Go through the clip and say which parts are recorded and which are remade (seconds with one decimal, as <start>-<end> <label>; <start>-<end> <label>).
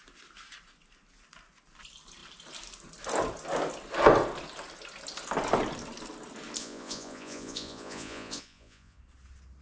0.0-6.6 recorded; 6.6-9.0 remade; 9.0-9.6 recorded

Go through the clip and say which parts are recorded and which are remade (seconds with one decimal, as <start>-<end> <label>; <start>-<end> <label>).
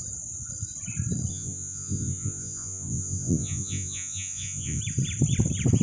0.0-1.3 recorded; 1.3-4.8 remade; 4.8-5.8 recorded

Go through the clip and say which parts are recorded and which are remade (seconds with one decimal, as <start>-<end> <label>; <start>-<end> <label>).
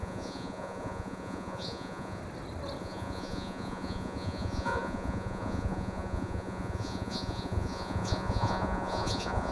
0.0-2.2 remade; 2.2-2.8 recorded; 2.8-9.5 remade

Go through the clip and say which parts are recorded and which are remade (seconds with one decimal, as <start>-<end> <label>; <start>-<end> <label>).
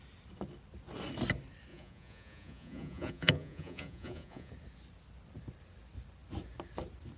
0.0-1.7 recorded; 1.7-4.5 remade; 4.5-7.2 recorded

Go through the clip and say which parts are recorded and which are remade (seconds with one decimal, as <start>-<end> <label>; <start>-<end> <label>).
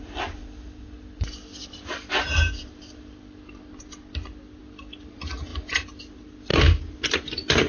0.0-7.7 recorded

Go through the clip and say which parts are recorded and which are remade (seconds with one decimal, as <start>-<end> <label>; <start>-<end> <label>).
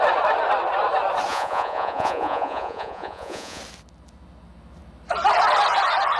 0.0-1.3 recorded; 1.3-3.6 remade; 3.6-6.2 recorded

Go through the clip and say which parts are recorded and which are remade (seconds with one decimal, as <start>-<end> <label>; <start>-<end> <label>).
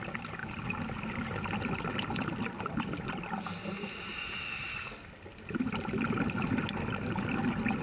0.0-7.8 recorded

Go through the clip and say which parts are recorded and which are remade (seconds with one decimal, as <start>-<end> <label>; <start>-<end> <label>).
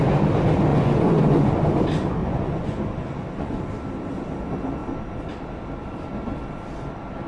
0.0-0.7 recorded; 0.7-1.5 remade; 1.5-2.2 recorded; 2.2-3.6 remade; 3.6-7.3 recorded